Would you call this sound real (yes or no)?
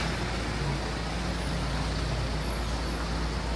yes